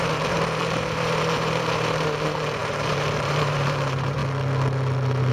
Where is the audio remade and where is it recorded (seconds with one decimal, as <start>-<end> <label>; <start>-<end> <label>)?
0.0-4.2 remade; 4.2-5.3 recorded